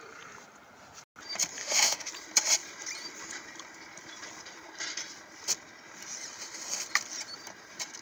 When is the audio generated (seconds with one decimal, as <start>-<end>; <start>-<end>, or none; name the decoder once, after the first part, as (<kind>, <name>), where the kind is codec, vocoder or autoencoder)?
1.6-2.1 (autoencoder, DAC-VAE)